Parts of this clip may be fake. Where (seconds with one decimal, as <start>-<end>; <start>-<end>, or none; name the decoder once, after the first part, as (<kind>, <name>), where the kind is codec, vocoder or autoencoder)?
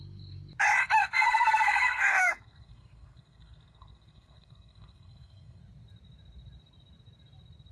1.0-5.6 (codec, SNAC)